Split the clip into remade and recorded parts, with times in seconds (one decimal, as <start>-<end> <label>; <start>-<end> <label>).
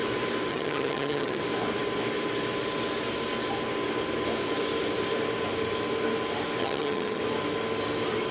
0.0-0.5 recorded; 0.5-1.4 remade; 1.4-6.6 recorded; 6.6-7.2 remade; 7.2-8.3 recorded